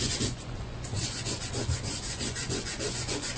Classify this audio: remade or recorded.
remade